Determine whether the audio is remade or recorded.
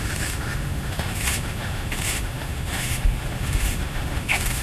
remade